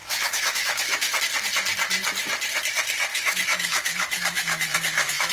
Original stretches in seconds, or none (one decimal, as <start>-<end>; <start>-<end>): 1.2-3.1